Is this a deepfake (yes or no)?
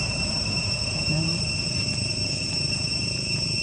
yes